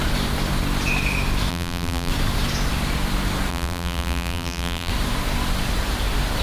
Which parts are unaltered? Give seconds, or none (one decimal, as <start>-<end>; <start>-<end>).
0.0-1.5; 2.1-3.5; 4.9-6.4